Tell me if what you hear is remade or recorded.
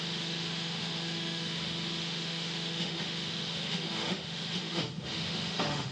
remade